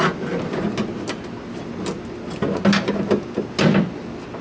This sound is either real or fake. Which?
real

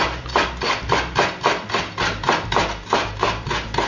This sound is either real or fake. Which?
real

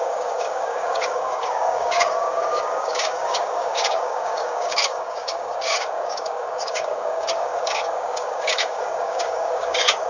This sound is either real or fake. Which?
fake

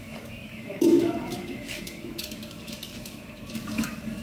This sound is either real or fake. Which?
fake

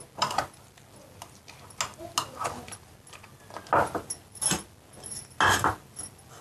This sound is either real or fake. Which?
real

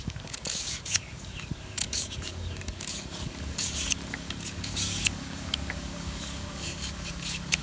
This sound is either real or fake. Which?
fake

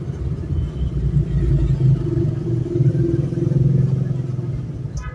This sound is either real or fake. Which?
real